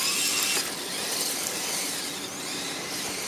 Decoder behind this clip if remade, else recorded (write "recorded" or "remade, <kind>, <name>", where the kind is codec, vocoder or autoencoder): recorded